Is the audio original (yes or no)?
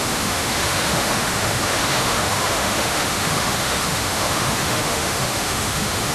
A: no